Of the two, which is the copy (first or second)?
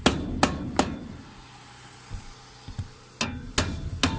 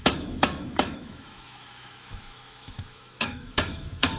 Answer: second